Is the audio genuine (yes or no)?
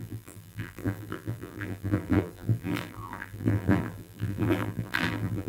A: no